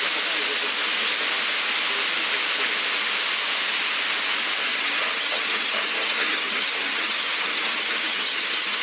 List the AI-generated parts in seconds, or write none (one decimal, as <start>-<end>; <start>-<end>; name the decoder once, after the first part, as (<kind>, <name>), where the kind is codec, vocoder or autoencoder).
4.6-8.8 (vocoder, HiFi-GAN)